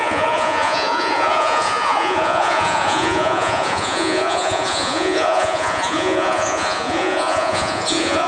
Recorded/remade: remade